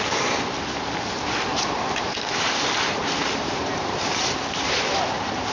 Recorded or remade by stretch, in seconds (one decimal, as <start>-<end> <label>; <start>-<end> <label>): 0.0-1.5 recorded; 1.5-4.8 remade; 4.8-5.5 recorded